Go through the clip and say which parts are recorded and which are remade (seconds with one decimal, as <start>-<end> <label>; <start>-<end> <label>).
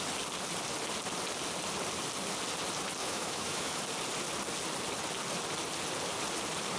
0.0-3.0 recorded; 3.0-3.8 remade; 3.8-6.8 recorded